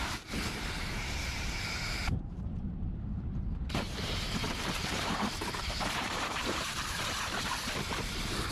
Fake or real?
fake